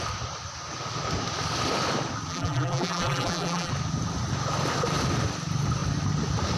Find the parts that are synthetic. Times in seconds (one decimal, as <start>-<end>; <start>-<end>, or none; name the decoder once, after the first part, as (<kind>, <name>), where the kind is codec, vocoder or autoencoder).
2.3-3.7 (vocoder, BigVGAN v2)